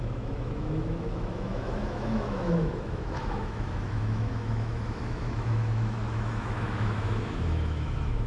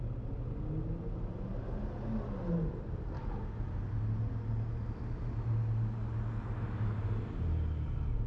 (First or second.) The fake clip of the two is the first